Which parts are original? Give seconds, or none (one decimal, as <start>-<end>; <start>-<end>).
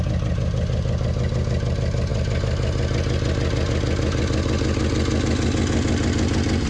0.0-6.7